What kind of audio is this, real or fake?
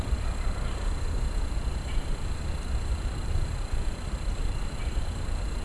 fake